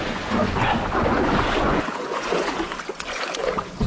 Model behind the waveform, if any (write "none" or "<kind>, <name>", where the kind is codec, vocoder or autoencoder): vocoder, Vocos